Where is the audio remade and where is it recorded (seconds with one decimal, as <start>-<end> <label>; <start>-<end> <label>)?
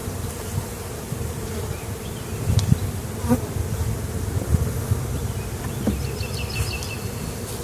0.0-2.0 remade; 2.0-3.0 recorded; 3.0-3.6 remade; 3.6-7.6 recorded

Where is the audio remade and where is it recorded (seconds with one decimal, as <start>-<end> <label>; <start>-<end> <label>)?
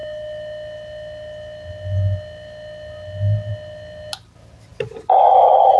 0.0-5.8 recorded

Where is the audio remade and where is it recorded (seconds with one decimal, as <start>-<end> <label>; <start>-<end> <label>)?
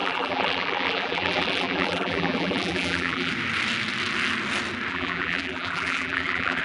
0.0-3.3 remade; 3.3-4.9 recorded; 4.9-6.6 remade